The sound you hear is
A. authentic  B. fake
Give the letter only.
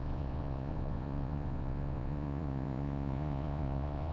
B